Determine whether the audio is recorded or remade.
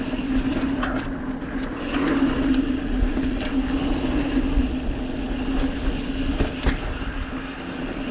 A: recorded